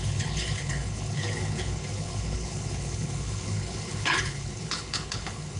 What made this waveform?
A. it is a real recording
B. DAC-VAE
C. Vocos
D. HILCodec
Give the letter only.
D